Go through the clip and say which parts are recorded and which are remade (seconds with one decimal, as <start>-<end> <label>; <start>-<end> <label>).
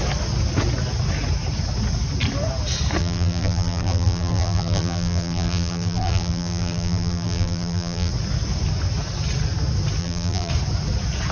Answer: 0.0-3.0 recorded; 3.0-8.1 remade; 8.1-10.0 recorded; 10.0-10.5 remade; 10.5-11.3 recorded